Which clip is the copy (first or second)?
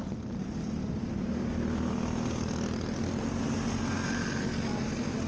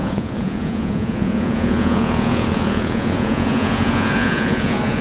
second